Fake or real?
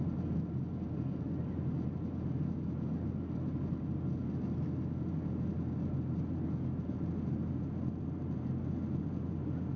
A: real